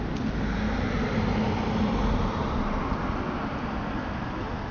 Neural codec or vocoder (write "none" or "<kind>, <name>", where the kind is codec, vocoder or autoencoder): none